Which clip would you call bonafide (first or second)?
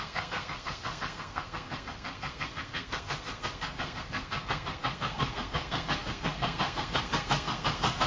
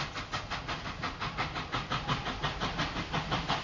second